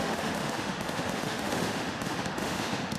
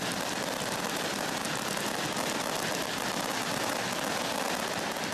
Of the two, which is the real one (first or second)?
second